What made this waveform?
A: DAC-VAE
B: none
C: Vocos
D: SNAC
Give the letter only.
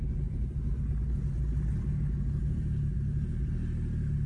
B